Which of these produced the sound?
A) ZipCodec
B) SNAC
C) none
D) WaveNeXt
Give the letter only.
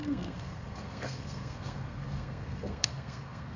B